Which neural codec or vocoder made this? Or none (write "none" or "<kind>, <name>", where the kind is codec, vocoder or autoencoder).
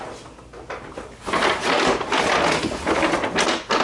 none